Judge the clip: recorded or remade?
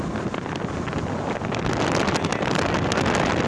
recorded